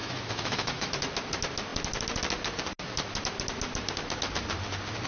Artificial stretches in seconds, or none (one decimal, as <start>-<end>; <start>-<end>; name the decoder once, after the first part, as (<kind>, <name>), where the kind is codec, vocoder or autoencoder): 0.0-0.9 (autoencoder, DAC-VAE)